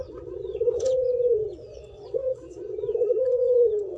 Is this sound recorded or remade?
remade